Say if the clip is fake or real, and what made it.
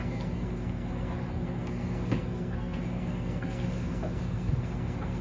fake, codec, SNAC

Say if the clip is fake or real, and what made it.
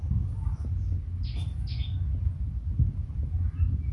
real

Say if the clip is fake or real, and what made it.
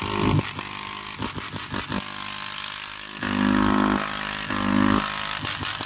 real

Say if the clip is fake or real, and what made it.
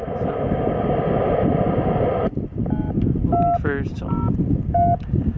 real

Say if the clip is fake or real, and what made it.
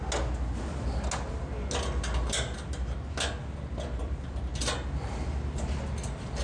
real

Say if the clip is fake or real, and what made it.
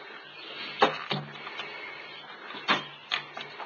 real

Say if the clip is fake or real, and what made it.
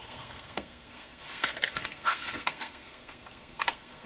fake, codec, SNAC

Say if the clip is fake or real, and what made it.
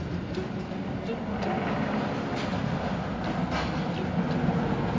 real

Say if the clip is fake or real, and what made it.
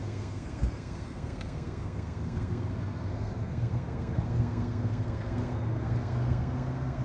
fake, codec, SNAC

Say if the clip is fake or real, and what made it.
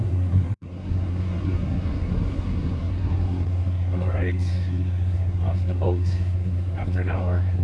fake, codec, SNAC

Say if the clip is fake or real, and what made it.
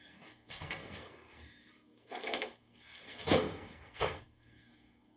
fake, codec, SNAC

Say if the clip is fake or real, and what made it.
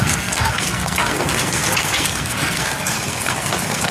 fake, codec, SNAC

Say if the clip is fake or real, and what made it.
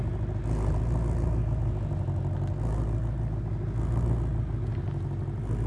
real